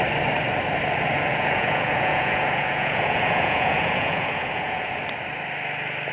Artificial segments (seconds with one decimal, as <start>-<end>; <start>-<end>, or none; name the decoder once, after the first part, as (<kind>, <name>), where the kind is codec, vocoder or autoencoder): 1.3-5.0 (vocoder, Vocos)

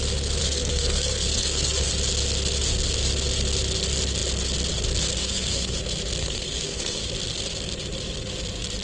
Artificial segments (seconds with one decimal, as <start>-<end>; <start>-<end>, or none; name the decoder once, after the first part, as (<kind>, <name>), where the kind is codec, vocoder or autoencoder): 0.4-1.9 (codec, SNAC); 5.2-5.8; 6.2-7.0

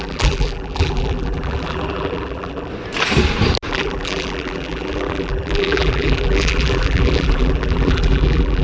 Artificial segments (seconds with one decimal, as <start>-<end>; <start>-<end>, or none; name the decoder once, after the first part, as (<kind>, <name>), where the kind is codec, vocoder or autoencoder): 0.0-2.7 (vocoder, BigVGAN v2); 3.7-8.6